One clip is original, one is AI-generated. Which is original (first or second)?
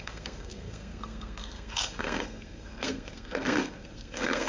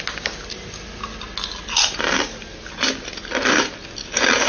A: second